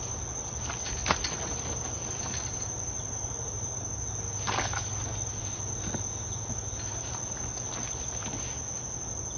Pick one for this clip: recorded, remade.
recorded